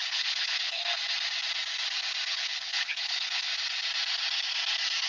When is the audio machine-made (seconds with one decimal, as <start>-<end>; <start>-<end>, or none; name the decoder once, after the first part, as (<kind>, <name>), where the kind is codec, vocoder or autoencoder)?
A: 0.0-0.8 (codec, HILCodec); 2.3-3.5